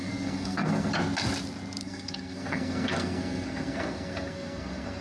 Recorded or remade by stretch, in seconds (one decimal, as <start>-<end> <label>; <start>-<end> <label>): 0.0-0.9 remade; 0.9-1.8 recorded; 1.8-5.0 remade